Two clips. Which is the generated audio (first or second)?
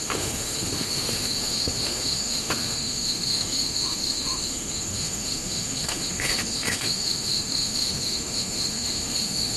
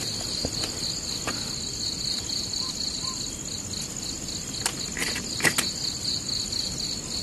first